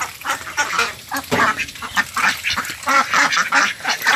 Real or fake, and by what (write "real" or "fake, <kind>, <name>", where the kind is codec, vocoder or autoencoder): real